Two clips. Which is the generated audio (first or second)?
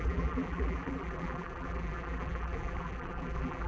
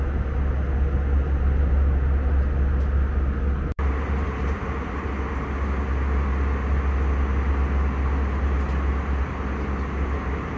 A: first